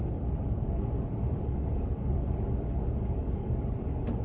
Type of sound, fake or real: fake